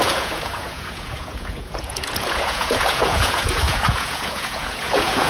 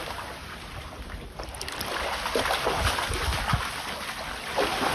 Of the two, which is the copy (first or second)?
first